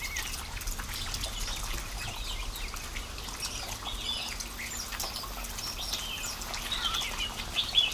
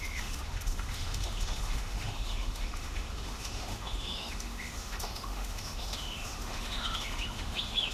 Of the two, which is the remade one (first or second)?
second